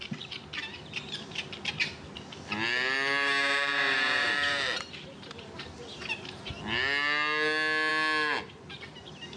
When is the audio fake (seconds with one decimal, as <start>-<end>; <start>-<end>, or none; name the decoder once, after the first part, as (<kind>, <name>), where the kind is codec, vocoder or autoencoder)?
3.7-6.5 (vocoder, BigVGAN v2)